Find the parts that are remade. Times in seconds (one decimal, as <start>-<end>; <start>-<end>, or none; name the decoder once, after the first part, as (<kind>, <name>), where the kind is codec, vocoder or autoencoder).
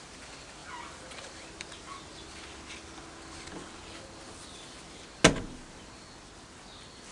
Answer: none